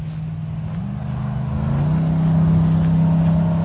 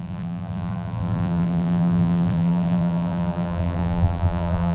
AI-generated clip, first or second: second